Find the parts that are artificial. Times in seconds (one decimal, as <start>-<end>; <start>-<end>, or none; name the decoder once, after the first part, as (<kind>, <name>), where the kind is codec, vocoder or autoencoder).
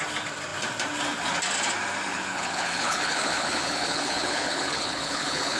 2.1-5.6 (codec, HILCodec)